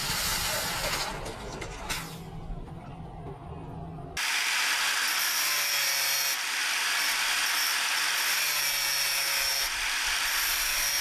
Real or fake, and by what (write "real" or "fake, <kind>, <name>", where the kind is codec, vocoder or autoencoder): real